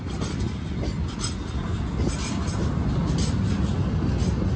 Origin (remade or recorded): recorded